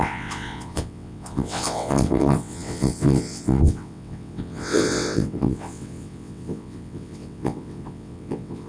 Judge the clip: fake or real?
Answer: fake